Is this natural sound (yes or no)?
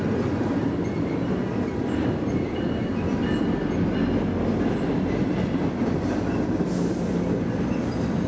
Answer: yes